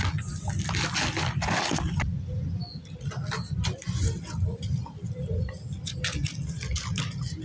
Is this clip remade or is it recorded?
recorded